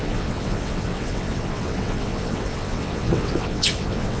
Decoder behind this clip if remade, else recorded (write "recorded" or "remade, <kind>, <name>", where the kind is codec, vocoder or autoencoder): remade, vocoder, WaveNeXt